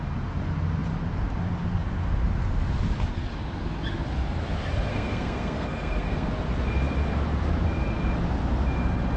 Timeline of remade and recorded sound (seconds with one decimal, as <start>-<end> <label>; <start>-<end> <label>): 0.0-4.9 recorded; 4.9-6.3 remade; 6.3-9.2 recorded